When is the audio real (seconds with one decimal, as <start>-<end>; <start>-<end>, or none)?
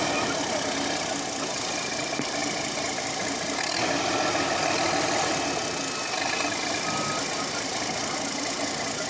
0.0-9.1